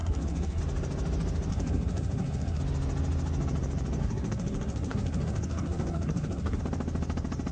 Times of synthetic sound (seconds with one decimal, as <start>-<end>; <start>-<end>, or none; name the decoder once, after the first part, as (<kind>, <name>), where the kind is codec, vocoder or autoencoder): 0.0-0.6 (codec, SNAC); 1.5-2.6; 4.0-6.6